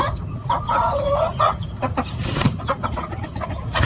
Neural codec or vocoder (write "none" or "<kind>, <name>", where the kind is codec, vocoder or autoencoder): vocoder, Vocos